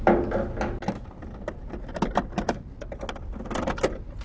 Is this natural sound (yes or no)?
yes